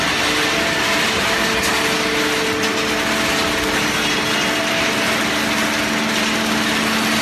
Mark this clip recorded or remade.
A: recorded